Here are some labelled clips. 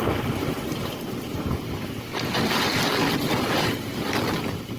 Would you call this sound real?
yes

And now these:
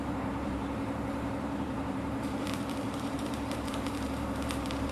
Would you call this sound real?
no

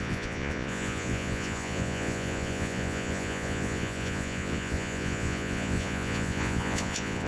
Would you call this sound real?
no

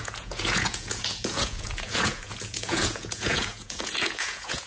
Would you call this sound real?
no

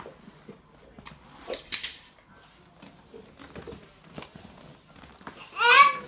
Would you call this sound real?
yes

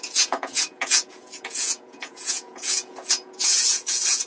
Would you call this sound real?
no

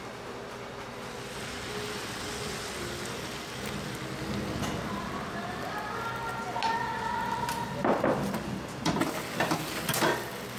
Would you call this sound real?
yes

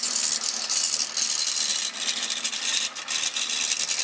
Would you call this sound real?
yes